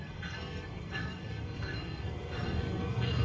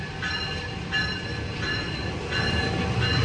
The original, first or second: second